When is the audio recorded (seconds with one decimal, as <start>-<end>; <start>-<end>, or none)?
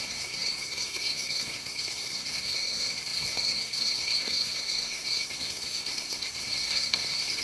none